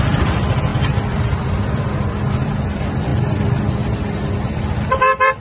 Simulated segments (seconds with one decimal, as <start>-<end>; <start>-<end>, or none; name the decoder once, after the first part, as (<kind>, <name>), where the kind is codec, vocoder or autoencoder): 0.0-3.1 (vocoder, BigVGAN v2); 4.4-5.4